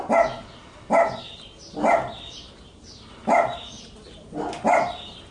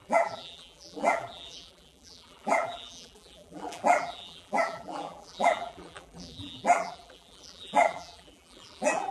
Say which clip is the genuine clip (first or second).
first